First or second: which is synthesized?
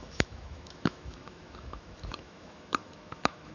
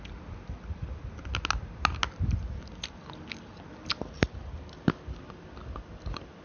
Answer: first